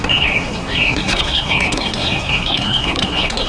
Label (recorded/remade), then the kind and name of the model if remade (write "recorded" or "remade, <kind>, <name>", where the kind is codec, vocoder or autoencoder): remade, codec, SNAC